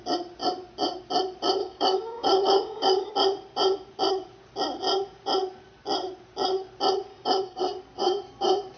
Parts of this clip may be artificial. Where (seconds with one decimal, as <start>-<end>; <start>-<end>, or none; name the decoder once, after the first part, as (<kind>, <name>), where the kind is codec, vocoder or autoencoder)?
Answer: 1.6-3.1 (codec, DAC); 7.1-7.6